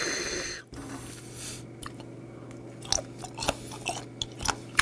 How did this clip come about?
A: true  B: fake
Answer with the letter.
A